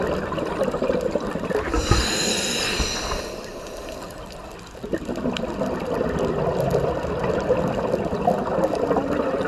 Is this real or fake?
real